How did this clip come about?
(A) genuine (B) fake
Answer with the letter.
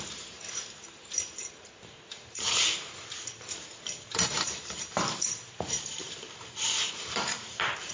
B